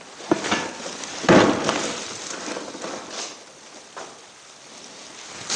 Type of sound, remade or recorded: recorded